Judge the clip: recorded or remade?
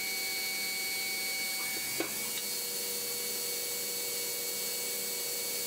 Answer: recorded